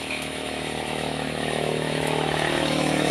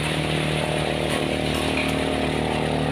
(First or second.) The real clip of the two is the second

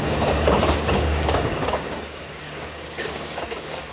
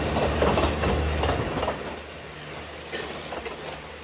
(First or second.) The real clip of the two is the second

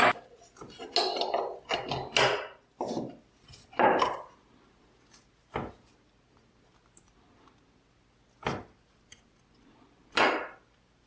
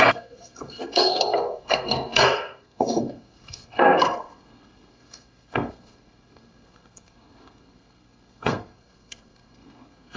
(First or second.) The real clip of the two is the first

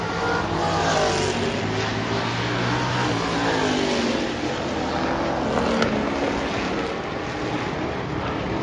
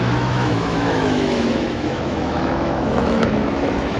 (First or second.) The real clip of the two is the first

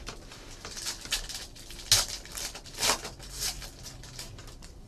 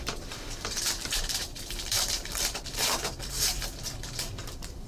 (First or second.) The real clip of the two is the first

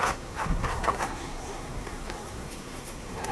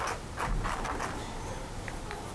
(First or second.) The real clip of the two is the second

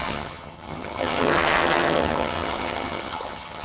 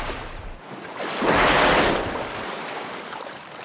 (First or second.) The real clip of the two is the second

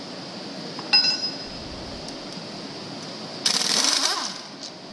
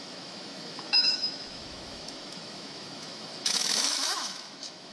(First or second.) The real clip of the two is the first